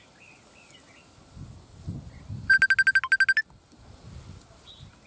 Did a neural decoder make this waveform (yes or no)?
no